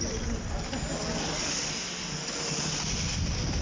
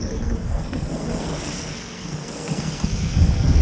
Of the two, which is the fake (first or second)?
second